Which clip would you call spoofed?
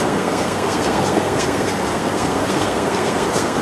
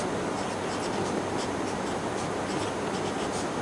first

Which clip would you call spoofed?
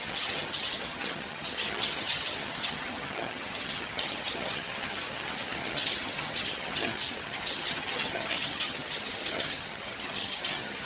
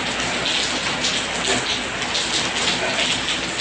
first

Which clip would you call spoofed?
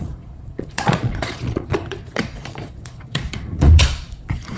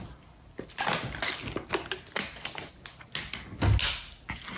first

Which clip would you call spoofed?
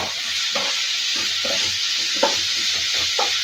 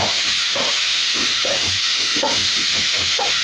second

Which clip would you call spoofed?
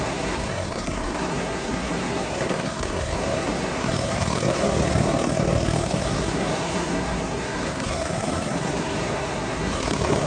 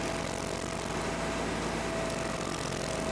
first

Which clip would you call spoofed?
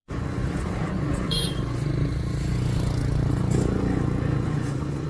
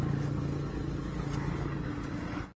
first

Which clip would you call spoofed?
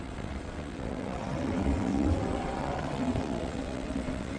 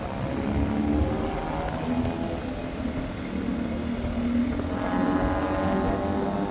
first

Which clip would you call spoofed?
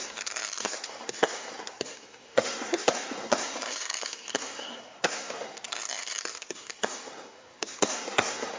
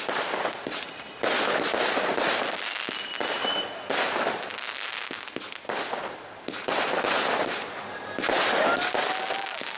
first